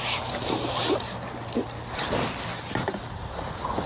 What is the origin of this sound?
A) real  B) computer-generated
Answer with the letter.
A